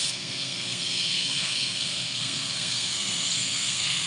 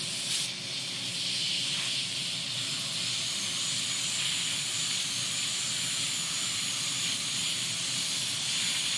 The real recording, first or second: second